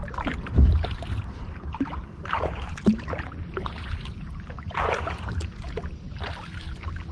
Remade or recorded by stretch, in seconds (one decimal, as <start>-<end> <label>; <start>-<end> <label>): 0.0-1.1 remade; 1.1-2.0 recorded; 2.0-6.3 remade; 6.3-7.1 recorded